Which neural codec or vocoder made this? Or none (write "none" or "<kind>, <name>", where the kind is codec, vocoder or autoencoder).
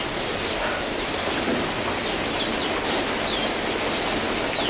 none